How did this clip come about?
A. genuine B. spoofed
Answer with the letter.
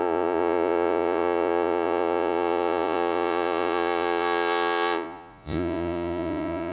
B